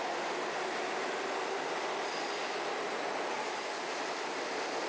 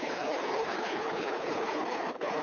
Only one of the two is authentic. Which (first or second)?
first